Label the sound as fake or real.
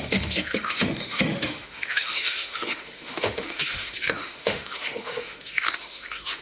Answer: fake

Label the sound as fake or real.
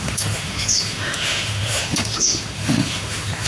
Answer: fake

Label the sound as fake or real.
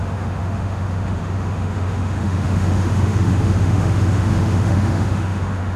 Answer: fake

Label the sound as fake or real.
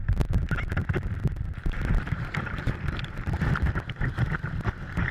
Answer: real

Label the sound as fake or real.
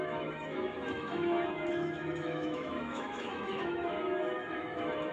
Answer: fake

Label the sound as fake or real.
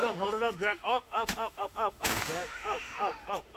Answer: fake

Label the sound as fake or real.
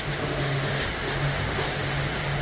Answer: fake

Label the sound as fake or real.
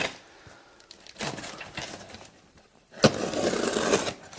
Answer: real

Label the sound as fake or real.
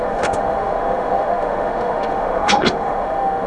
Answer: fake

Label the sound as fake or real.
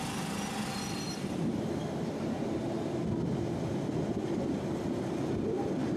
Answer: real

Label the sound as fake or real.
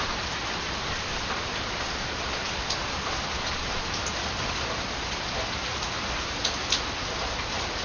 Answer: real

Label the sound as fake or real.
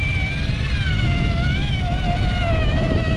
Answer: real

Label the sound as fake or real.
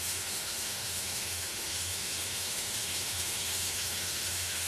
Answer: fake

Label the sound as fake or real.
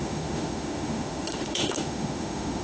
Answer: fake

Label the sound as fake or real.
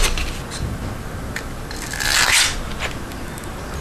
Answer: real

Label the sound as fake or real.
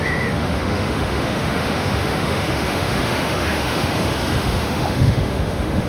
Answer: fake